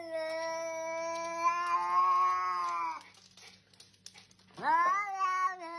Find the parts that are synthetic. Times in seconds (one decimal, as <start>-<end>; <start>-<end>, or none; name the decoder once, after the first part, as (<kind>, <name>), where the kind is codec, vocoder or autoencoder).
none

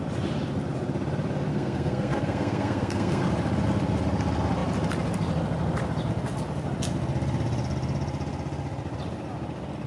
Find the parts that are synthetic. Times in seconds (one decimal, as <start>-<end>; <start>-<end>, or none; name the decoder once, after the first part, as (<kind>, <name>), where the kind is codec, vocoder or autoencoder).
1.5-3.2 (codec, SNAC)

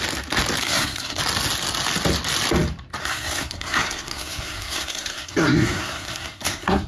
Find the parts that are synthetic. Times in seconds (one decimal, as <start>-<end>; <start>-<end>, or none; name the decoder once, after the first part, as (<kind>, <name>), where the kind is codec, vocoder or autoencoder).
0.6-1.2 (codec, SNAC); 3.0-6.9

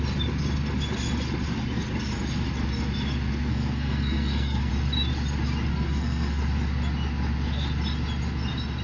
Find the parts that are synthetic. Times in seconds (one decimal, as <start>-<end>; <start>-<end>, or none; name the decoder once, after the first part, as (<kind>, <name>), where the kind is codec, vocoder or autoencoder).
3.5-4.7 (codec, SNAC); 5.7-6.4